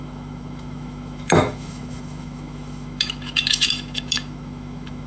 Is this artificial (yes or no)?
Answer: yes